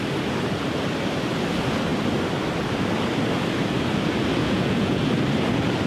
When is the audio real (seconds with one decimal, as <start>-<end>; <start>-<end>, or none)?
0.0-4.4; 5.0-5.9